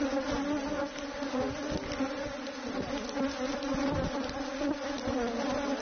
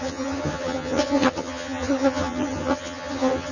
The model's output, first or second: second